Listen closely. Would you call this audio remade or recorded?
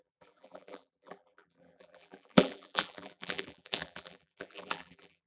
remade